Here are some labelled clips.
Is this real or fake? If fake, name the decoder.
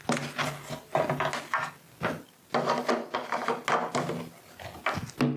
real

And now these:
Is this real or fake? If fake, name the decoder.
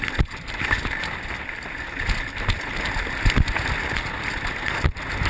real